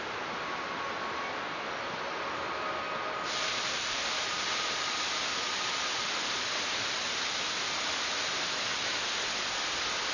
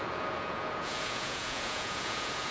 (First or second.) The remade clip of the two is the second